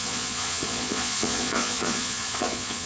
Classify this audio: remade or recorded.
remade